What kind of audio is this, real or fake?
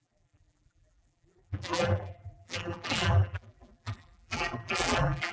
fake